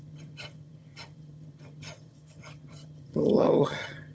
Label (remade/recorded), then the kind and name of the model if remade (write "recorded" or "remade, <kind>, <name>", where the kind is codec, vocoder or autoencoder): remade, vocoder, HiFi-GAN